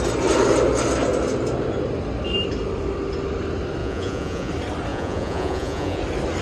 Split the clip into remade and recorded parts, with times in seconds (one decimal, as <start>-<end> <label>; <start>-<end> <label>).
0.0-3.8 recorded; 3.8-4.5 remade; 4.5-4.9 recorded; 4.9-6.0 remade; 6.0-6.4 recorded